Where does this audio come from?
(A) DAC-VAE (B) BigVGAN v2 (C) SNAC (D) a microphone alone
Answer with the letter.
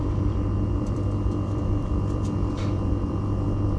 B